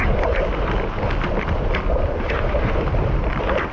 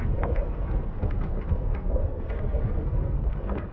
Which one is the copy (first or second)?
second